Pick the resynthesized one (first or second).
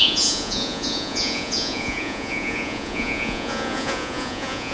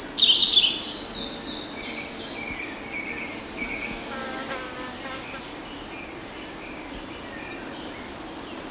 first